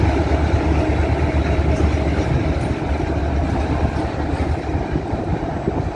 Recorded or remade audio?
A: recorded